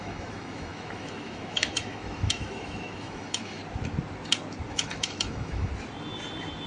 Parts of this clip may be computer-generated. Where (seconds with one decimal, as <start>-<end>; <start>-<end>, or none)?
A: 0.0-3.6; 4.7-5.7